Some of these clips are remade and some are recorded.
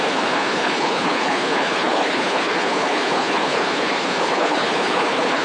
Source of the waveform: remade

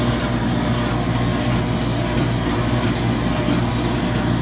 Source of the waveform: recorded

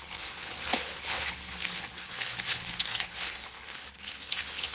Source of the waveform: remade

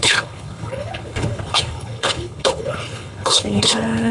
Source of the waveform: remade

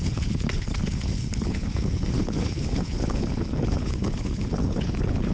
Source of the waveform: remade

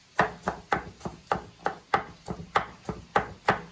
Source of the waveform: recorded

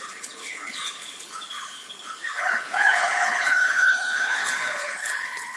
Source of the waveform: remade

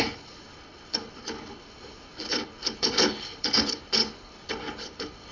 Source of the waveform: remade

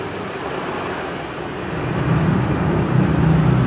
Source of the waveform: recorded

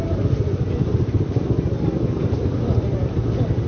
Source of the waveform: recorded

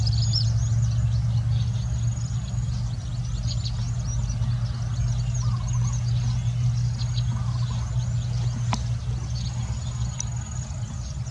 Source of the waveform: recorded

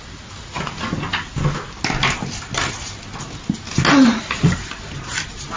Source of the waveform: recorded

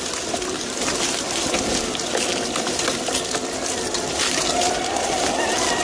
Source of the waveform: recorded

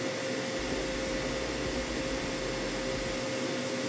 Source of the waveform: recorded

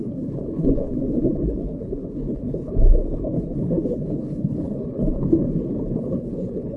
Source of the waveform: remade